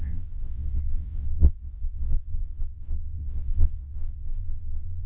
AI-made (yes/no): yes